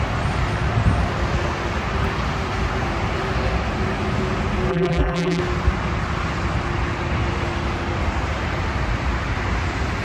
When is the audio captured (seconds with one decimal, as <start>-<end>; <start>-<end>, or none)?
0.0-4.7; 5.4-10.0